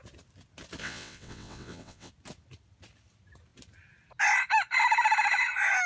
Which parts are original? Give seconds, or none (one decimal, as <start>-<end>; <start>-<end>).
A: 0.0-0.8; 2.1-5.9